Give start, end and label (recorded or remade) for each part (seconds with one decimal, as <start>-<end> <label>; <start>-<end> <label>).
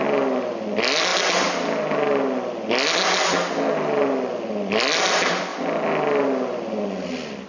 0.0-7.5 recorded